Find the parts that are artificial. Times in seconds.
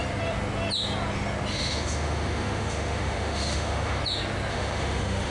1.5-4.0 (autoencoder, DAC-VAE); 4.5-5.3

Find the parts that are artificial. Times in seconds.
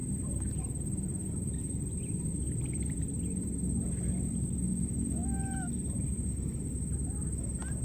0.0-4.7 (vocoder, BigVGAN v2)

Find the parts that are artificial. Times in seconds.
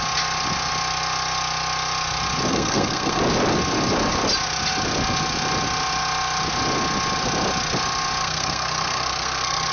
2.5-3.2 (codec, SNAC); 8.2-9.7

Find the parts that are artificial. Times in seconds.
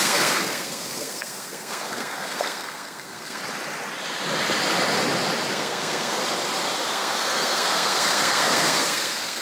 0.0-3.4 (codec, SNAC); 5.5-6.2; 6.9-9.4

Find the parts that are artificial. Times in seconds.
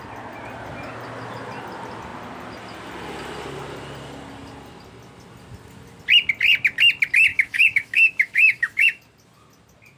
7.3-9.0 (autoencoder, DAC-VAE)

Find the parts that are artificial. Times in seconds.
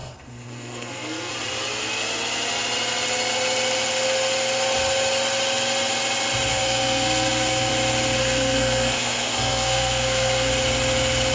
0.0-1.3 (codec, SNAC); 6.5-7.7; 8.2-10.5